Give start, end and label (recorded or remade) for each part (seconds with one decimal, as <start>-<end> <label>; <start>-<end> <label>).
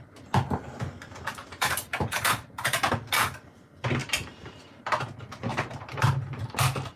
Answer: 0.0-1.4 recorded; 1.4-2.9 remade; 2.9-4.0 recorded; 4.0-5.0 remade; 5.0-5.5 recorded; 5.5-6.4 remade; 6.4-7.0 recorded